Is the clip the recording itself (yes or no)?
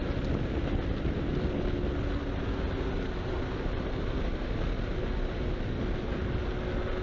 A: yes